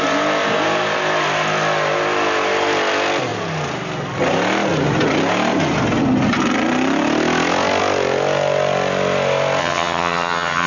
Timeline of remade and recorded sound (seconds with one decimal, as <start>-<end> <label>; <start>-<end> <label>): 0.0-9.6 recorded; 9.6-10.7 remade